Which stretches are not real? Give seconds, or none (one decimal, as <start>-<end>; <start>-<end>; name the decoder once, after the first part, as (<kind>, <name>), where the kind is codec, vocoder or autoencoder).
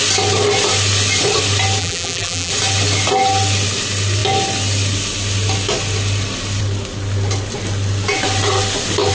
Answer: 1.8-2.5 (vocoder, BigVGAN v2)